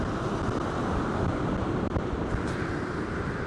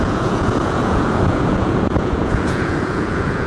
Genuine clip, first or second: first